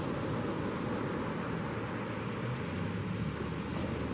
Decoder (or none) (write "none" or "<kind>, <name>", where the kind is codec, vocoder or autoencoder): none